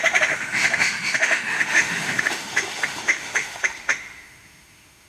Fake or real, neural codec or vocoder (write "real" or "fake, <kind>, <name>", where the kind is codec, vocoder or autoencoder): fake, autoencoder, DAC-VAE